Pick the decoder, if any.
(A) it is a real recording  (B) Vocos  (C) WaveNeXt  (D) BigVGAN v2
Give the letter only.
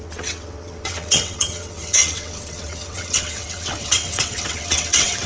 C